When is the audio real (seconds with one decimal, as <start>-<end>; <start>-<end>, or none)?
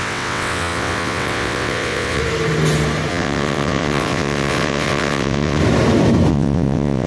2.2-3.1; 5.6-6.3